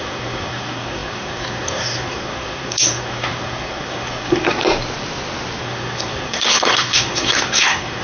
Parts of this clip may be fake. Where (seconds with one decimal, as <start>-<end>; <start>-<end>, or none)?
0.0-4.6; 5.6-8.0